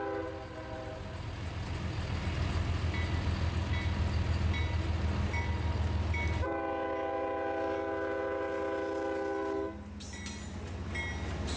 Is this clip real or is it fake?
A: real